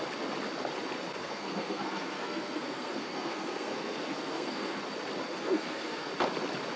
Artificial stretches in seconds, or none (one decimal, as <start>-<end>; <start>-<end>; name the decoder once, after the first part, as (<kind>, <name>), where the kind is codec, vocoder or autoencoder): 1.2-4.8 (codec, SNAC); 5.3-6.1